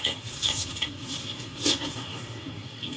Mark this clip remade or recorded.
remade